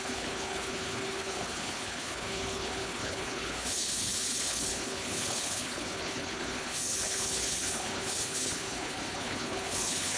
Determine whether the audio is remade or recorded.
remade